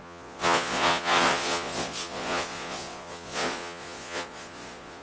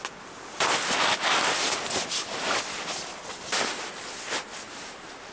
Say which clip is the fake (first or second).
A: first